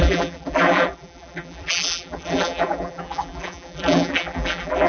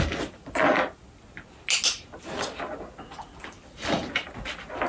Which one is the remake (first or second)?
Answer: first